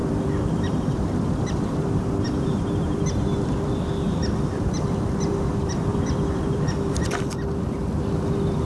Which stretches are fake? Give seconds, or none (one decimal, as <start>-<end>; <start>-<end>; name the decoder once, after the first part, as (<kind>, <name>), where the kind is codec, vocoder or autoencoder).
0.0-8.7 (vocoder, BigVGAN v2)